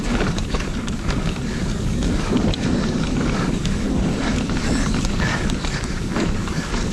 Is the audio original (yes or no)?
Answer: no